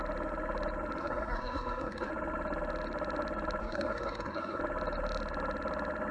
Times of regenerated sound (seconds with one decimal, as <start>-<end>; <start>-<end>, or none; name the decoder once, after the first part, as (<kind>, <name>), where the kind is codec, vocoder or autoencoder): 1.0-2.1 (codec, SNAC); 3.6-4.6